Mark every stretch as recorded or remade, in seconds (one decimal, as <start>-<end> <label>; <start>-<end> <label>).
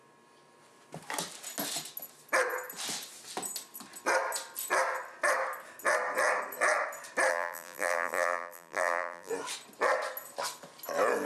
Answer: 0.0-7.3 recorded; 7.3-9.3 remade; 9.3-11.3 recorded